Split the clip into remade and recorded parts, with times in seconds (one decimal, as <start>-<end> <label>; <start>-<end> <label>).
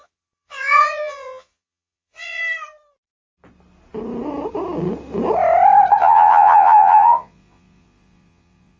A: 0.0-2.4 remade; 2.4-6.0 recorded; 6.0-8.8 remade